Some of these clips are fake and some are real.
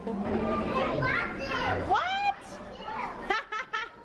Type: fake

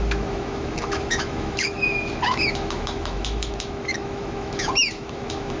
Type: fake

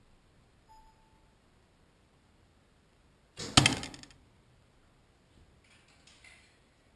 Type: real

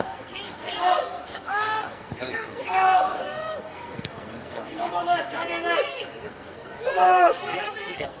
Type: fake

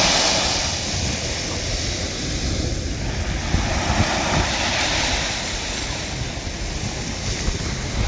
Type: real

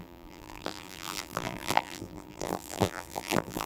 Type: fake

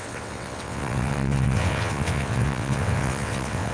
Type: fake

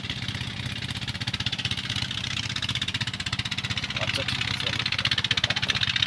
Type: real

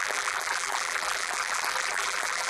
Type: fake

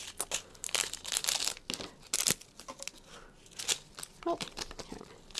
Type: real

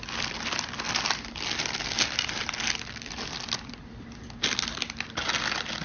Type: real